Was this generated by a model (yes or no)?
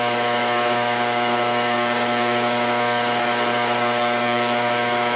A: yes